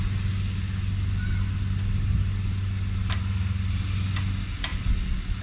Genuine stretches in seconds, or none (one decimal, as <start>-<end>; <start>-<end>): 0.0-5.4